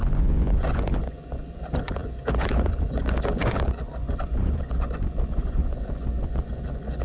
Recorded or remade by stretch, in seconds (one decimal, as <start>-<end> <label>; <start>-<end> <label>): 0.0-7.0 remade